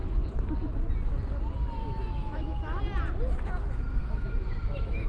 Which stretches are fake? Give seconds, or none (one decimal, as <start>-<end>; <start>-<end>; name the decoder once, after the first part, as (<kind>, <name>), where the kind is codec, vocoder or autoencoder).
1.8-2.8 (autoencoder, DAC-VAE); 4.0-5.1